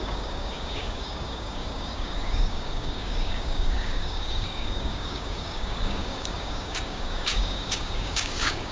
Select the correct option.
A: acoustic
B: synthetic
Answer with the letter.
B